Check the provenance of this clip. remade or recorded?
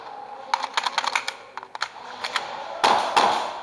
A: recorded